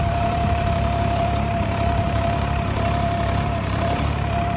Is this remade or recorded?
remade